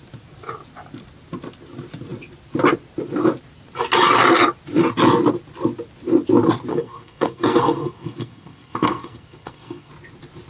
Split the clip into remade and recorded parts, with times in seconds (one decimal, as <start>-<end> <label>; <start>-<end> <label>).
0.0-6.7 recorded; 6.7-9.9 remade; 9.9-10.5 recorded